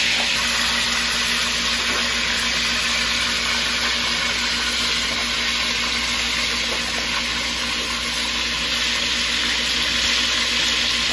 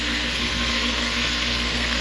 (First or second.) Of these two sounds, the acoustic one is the first